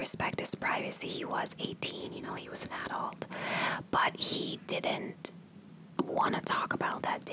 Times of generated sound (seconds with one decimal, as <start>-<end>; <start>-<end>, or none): 2.0-2.9